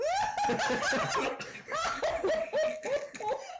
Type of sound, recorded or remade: recorded